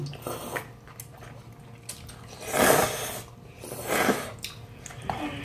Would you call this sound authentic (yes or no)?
yes